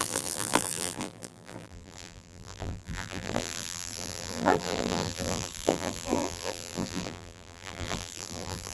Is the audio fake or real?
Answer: fake